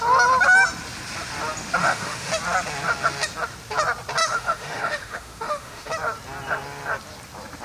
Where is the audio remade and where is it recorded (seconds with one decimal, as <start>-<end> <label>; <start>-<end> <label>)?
0.0-1.8 recorded; 1.8-2.3 remade; 2.3-4.2 recorded; 4.2-5.9 remade; 5.9-7.6 recorded